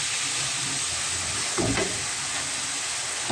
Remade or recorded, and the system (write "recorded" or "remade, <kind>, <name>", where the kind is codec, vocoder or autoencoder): recorded